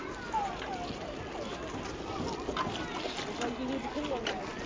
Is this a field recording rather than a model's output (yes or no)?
yes